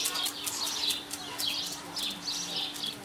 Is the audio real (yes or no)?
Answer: yes